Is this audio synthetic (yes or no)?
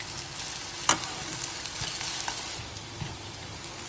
no